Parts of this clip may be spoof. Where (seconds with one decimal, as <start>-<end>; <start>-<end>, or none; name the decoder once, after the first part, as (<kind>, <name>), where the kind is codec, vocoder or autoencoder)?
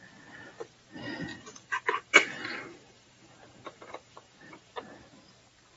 1.3-4.8 (vocoder, BigVGAN v2)